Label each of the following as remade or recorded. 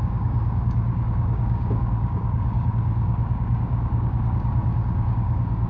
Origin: remade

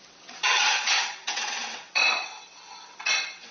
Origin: remade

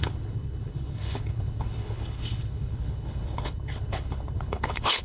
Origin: remade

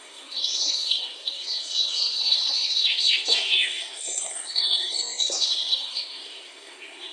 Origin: remade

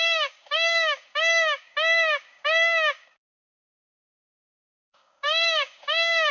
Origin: remade